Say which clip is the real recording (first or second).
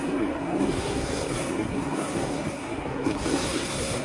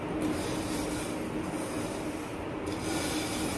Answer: second